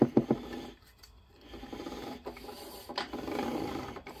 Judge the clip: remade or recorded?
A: recorded